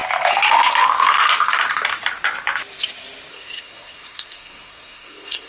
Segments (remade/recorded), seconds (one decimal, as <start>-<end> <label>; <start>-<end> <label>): 0.0-3.3 recorded; 3.3-5.5 remade